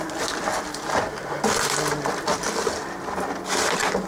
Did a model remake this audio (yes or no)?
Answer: no